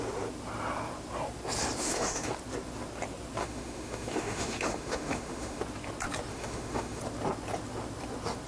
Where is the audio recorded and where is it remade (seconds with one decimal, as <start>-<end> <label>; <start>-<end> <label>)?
0.0-1.8 recorded; 1.8-2.3 remade; 2.3-3.4 recorded; 3.4-5.6 remade; 5.6-6.3 recorded; 6.3-7.0 remade; 7.0-8.5 recorded